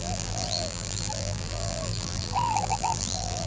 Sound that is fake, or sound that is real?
fake